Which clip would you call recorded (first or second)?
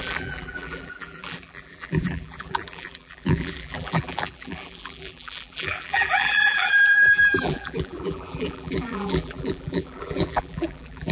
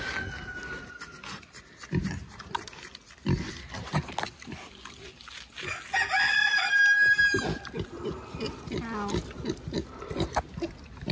second